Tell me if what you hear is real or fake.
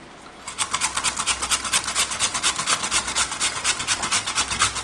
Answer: real